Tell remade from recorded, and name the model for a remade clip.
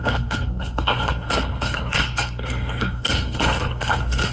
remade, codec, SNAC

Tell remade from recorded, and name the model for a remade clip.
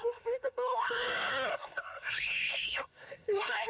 remade, codec, SNAC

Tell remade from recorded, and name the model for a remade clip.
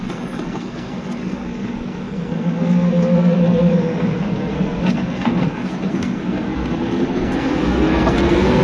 remade, codec, SNAC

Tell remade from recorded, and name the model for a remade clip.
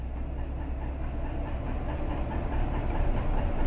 recorded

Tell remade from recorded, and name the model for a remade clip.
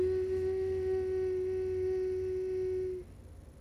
recorded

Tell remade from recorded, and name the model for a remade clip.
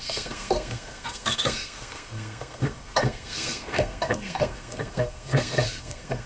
remade, codec, SNAC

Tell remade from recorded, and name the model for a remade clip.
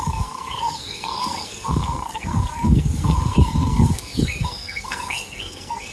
remade, codec, SNAC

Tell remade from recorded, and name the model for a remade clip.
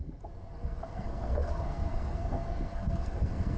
remade, codec, SNAC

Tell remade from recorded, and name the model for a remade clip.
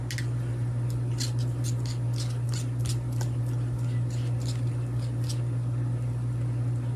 recorded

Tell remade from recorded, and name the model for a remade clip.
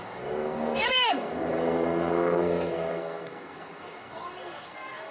remade, codec, SNAC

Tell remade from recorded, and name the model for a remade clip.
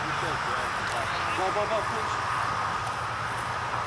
recorded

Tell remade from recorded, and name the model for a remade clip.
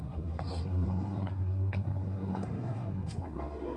remade, codec, SNAC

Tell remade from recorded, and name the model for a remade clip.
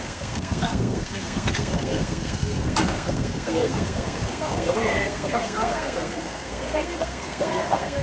remade, codec, SNAC